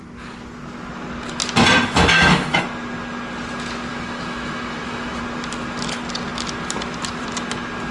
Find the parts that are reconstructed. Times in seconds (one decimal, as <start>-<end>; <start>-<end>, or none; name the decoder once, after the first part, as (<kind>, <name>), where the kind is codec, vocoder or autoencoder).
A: 2.1-2.6 (autoencoder, DAC-VAE); 3.9-5.2